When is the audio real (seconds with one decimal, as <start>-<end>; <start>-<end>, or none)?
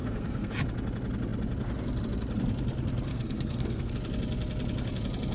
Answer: 0.5-3.1; 3.9-5.3